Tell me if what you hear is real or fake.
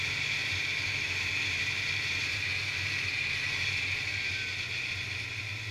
real